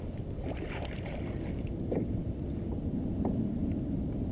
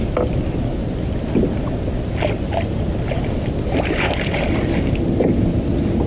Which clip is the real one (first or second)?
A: second